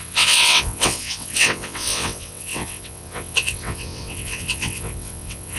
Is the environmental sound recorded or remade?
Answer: remade